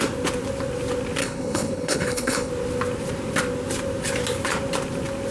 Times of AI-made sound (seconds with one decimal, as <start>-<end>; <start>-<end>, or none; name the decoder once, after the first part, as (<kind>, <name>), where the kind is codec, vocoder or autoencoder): 1.2-2.5 (codec, HILCodec)